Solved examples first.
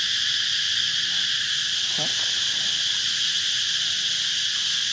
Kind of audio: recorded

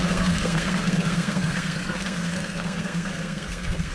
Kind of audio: remade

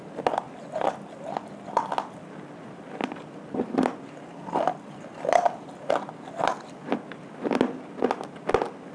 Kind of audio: recorded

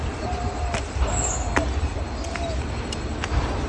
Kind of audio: recorded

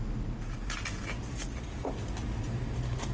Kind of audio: recorded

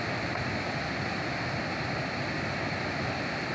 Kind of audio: recorded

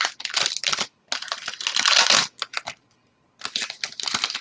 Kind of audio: recorded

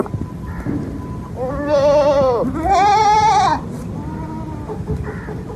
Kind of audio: recorded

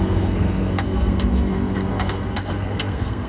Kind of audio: remade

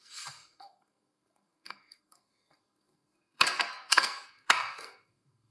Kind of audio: remade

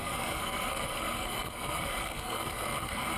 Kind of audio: remade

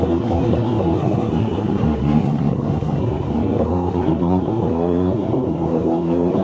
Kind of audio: remade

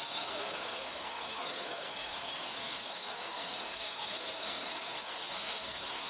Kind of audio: remade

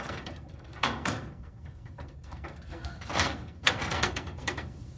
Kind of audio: remade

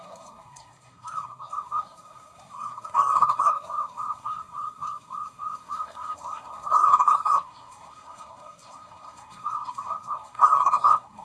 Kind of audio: remade